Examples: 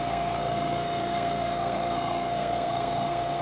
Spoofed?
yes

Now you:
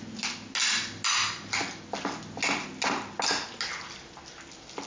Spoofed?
no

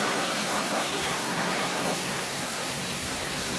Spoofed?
yes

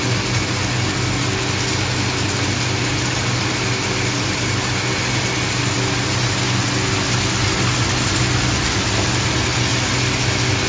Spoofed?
no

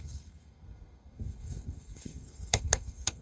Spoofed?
yes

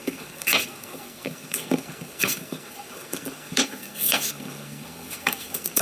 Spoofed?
yes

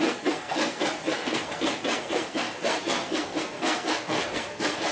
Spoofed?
yes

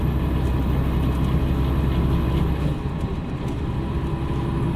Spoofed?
no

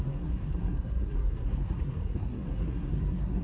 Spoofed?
yes